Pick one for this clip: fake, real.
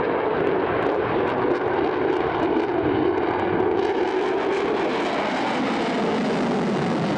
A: real